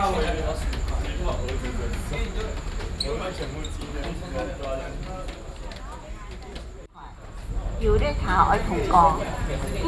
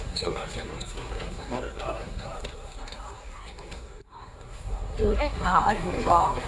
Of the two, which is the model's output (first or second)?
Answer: second